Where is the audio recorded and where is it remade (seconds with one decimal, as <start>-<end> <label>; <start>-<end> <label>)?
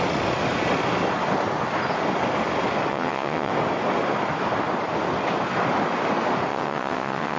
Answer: 0.0-2.9 recorded; 2.9-3.5 remade; 3.5-6.5 recorded; 6.5-7.4 remade